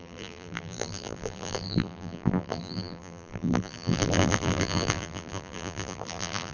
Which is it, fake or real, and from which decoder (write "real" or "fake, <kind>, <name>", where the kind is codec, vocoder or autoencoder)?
fake, vocoder, BigVGAN v2